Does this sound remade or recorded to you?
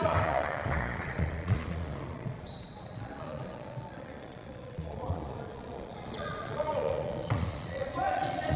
remade